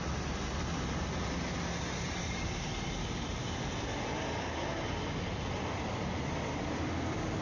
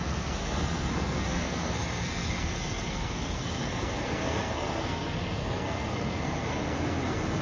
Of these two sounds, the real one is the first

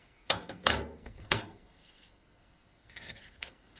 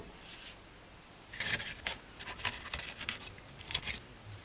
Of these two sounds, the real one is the second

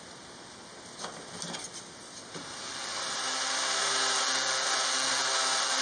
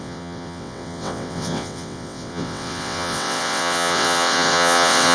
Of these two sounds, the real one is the first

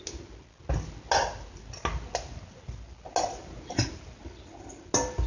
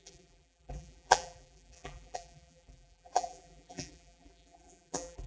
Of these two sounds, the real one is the first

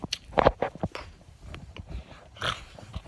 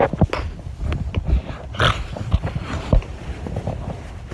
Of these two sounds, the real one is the second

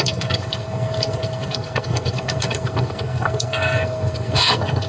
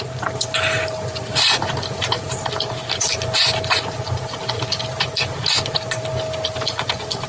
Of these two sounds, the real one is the second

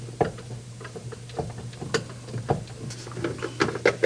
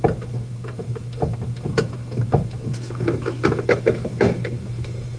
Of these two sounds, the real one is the first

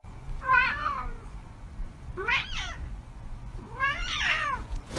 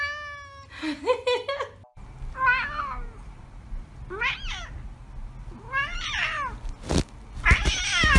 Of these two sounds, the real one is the second